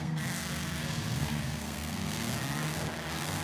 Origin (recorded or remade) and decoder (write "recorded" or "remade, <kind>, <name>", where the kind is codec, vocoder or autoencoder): remade, codec, SNAC